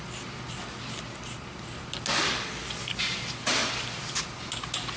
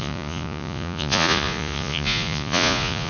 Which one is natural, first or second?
first